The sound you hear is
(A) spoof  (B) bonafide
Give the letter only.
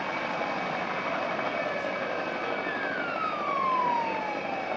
B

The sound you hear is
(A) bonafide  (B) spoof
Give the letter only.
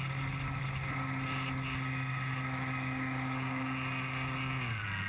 A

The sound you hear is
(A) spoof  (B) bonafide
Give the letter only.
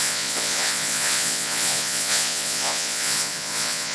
A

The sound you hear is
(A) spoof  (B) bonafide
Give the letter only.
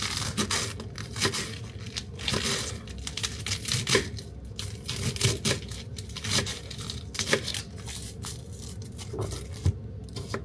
B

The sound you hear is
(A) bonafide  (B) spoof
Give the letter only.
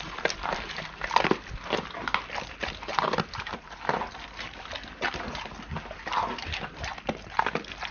B